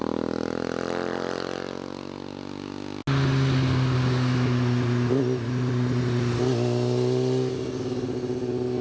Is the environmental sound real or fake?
real